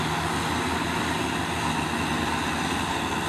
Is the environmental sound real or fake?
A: real